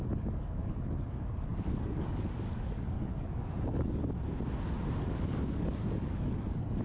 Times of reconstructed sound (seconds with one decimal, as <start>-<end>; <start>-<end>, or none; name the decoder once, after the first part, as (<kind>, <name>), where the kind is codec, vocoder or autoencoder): 0.0-4.0 (codec, DAC); 5.0-6.8